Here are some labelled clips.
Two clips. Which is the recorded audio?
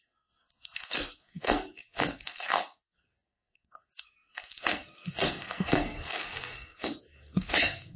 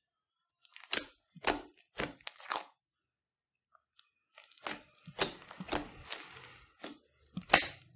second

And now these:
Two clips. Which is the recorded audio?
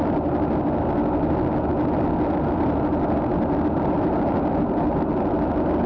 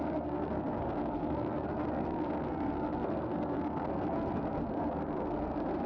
first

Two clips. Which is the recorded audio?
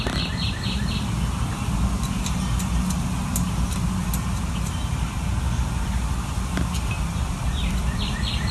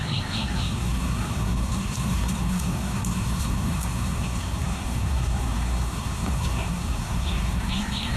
first